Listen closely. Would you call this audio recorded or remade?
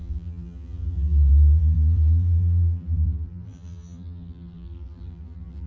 remade